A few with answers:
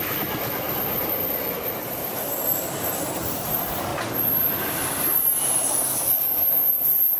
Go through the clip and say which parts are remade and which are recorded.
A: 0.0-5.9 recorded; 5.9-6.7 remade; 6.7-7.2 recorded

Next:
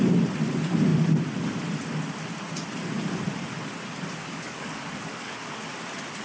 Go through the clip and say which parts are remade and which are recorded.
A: 0.0-4.2 recorded; 4.2-5.7 remade; 5.7-6.2 recorded